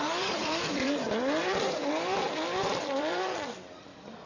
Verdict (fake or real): fake